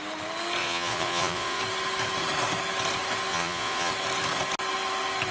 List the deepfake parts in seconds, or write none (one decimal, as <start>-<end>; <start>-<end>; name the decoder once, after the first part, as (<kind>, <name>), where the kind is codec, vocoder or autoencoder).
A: 0.6-1.6 (vocoder, Vocos); 3.3-3.9